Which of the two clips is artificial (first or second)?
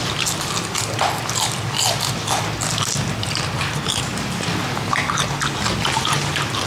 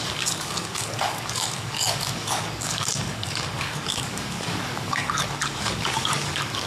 second